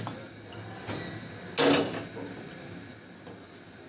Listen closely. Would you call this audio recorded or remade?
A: recorded